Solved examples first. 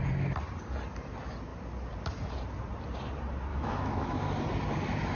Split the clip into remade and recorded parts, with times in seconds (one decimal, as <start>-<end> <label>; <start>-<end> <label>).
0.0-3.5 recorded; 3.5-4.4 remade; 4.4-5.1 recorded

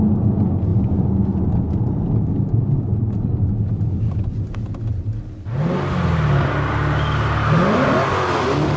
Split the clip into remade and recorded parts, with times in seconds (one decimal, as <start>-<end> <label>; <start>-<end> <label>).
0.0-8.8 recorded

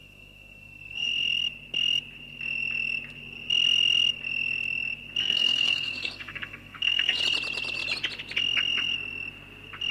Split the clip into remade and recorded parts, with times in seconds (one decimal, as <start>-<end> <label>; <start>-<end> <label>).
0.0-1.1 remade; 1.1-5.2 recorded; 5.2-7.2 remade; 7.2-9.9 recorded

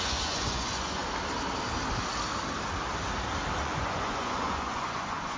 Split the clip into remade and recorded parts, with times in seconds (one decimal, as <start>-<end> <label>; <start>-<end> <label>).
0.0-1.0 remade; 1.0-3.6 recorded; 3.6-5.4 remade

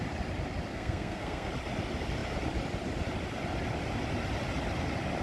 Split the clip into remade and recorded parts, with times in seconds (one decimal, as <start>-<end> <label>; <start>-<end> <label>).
0.0-0.7 recorded; 0.7-1.5 remade; 1.5-5.2 recorded

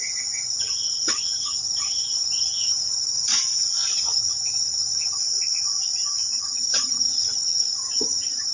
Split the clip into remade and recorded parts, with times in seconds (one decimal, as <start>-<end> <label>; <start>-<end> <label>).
0.0-3.3 remade; 3.3-4.0 recorded; 4.0-5.2 remade; 5.2-6.4 recorded; 6.4-8.5 remade

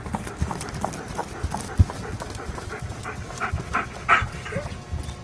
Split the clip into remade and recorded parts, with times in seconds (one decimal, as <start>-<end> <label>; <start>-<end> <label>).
0.0-5.2 recorded

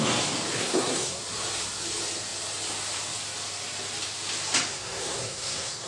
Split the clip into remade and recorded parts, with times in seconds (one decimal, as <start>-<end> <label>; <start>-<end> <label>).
0.0-0.6 recorded; 0.6-1.2 remade; 1.2-4.7 recorded; 4.7-5.9 remade